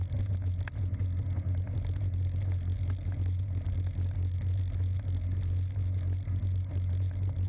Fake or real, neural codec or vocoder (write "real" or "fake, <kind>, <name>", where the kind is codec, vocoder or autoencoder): real